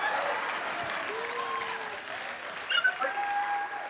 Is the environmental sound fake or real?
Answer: real